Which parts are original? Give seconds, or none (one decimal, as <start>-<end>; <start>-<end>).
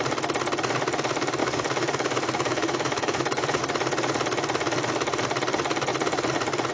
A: 0.0-1.4; 3.6-6.7